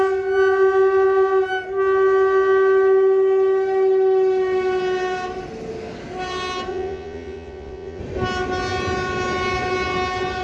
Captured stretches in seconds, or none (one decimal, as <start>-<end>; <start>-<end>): 0.0-6.7; 8.0-10.4